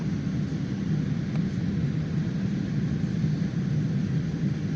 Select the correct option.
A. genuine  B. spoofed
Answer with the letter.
A